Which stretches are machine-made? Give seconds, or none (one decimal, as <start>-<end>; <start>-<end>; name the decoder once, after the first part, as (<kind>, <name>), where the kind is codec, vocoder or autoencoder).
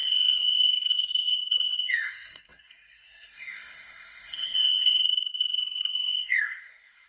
0.0-7.1 (codec, SNAC)